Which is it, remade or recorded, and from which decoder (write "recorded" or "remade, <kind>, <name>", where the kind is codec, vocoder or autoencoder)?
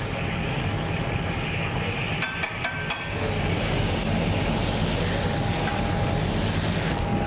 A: recorded